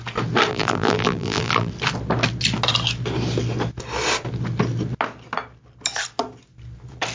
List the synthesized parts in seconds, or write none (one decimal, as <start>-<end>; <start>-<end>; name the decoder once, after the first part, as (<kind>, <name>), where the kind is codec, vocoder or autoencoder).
0.5-1.7 (vocoder, BigVGAN v2)